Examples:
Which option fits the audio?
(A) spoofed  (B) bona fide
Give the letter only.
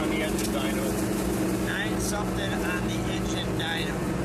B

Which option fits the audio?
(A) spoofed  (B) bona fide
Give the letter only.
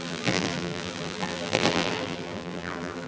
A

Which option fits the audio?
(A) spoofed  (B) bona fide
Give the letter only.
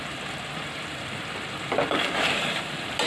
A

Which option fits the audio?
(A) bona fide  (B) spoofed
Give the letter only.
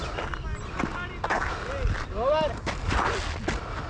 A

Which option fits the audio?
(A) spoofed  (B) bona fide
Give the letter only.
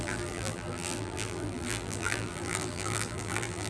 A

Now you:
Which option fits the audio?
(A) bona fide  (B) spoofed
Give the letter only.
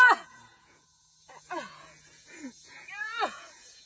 B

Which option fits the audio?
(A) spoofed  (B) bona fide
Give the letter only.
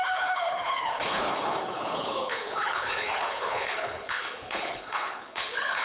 A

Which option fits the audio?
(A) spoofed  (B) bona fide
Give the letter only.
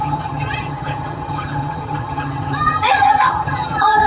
A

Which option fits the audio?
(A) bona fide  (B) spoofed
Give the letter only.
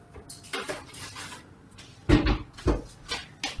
A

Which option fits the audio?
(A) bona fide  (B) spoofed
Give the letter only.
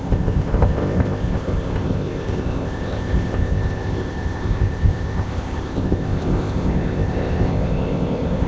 B